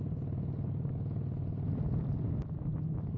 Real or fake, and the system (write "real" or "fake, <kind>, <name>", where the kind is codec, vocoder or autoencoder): real